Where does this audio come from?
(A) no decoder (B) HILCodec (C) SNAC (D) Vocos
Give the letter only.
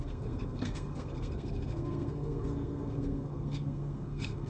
C